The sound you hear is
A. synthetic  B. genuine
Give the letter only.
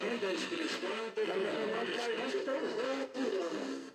A